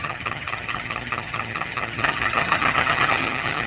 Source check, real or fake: fake